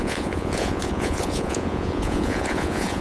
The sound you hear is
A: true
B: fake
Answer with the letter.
B